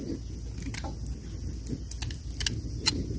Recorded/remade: recorded